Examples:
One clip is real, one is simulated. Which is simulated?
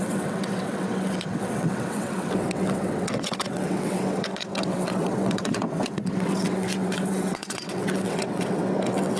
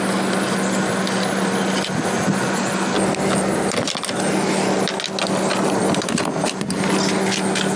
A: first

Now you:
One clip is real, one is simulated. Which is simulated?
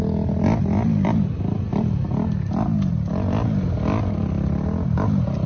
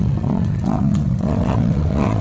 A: second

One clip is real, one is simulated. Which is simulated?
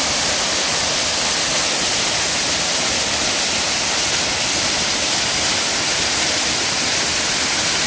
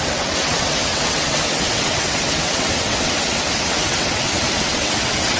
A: second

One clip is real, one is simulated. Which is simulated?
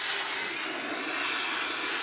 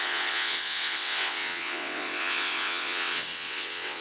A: second